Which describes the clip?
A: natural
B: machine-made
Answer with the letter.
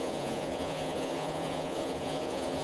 B